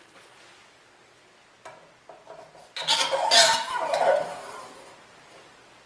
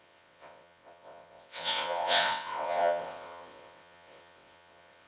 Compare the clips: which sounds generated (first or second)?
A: second